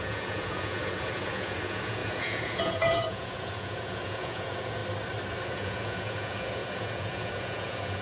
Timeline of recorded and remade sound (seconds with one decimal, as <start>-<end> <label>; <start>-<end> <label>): 0.0-4.8 remade; 4.8-5.5 recorded; 5.5-8.0 remade